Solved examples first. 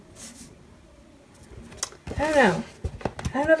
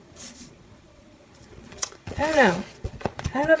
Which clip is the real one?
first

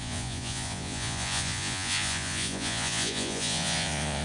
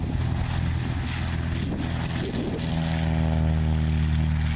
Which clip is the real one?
second